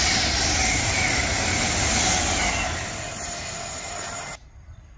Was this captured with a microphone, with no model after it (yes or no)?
yes